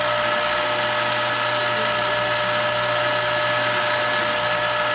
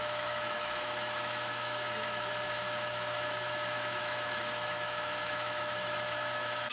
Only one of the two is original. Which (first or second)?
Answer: first